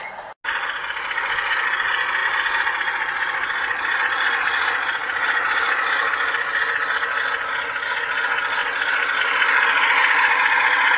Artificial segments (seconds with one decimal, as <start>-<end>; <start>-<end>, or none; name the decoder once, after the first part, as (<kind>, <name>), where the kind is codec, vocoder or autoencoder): none